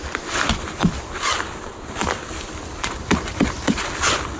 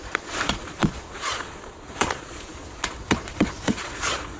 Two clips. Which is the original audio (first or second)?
first